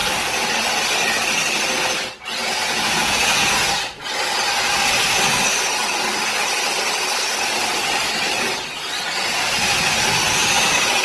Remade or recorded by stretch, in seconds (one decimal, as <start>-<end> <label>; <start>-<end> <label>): 0.0-2.4 recorded; 2.4-3.7 remade; 3.7-11.0 recorded